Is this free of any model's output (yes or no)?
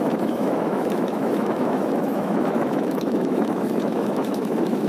no